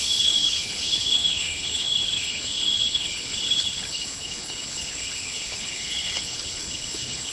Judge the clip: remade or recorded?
remade